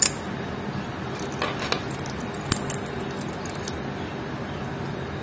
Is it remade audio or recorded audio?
recorded